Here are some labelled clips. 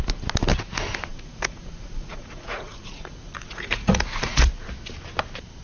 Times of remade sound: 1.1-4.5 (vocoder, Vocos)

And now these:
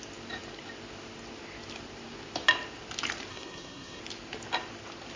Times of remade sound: 3.3-4.0 (codec, SNAC)